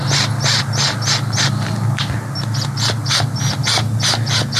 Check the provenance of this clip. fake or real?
real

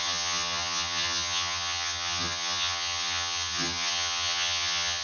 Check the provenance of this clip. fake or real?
fake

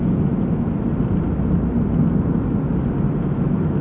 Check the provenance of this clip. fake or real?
real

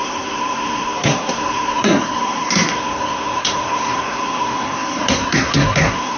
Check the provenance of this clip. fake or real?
fake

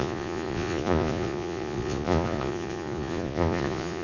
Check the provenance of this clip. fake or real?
fake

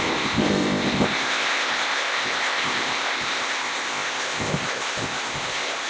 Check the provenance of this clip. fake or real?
fake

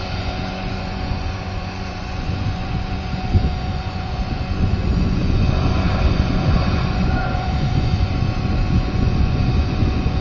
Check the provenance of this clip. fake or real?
fake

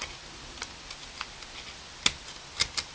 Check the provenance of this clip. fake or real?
real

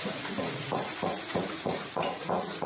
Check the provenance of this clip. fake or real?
fake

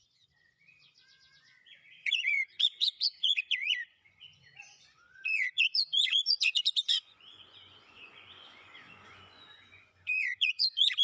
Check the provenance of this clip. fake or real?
fake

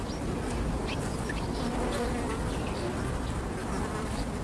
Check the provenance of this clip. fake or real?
real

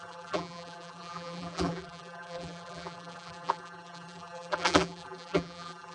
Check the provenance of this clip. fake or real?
fake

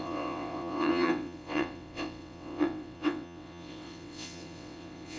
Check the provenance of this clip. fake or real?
fake